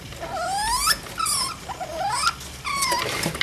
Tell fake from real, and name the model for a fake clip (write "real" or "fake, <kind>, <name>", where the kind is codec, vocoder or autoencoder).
real